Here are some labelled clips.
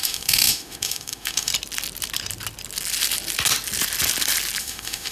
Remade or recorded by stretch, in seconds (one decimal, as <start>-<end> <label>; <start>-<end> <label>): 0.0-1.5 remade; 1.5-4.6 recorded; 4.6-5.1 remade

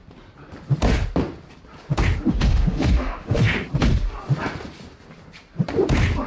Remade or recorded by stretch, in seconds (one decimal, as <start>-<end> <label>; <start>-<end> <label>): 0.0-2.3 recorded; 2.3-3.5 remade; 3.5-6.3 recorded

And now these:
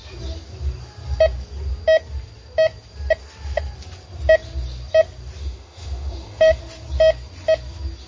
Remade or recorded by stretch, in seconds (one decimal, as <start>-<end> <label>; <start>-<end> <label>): 0.0-5.4 recorded; 5.4-6.6 remade; 6.6-8.1 recorded

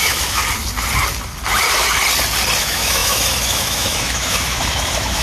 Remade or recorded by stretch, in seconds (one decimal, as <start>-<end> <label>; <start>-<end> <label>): 0.0-0.4 remade; 0.4-2.6 recorded; 2.6-5.2 remade

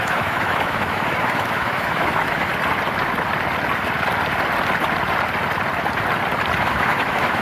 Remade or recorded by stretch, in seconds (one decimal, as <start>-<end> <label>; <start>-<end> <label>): 0.0-2.5 remade; 2.5-6.6 recorded; 6.6-7.4 remade

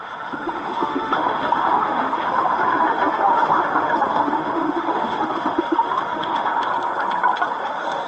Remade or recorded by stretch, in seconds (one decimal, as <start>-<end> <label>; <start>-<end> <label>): 0.0-6.7 remade; 6.7-7.5 recorded; 7.5-8.1 remade